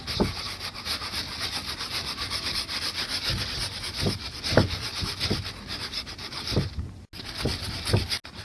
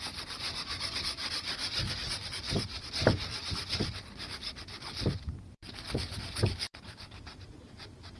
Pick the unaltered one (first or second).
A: first